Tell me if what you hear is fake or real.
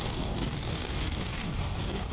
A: fake